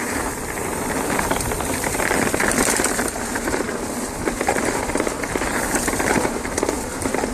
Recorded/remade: remade